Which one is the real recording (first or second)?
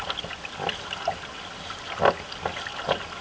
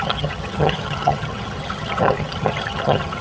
first